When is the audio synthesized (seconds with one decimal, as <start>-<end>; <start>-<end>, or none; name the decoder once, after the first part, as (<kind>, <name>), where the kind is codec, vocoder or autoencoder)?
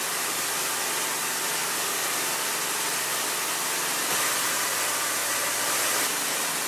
none